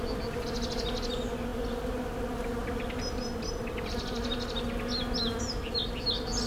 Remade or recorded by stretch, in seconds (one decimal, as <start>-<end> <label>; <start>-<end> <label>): 0.0-6.5 recorded